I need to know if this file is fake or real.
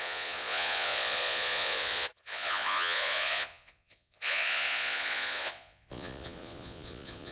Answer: fake